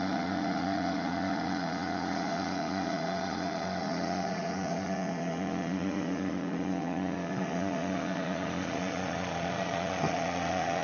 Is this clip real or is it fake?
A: fake